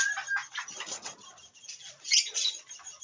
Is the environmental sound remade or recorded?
recorded